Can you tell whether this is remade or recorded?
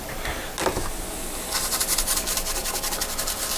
recorded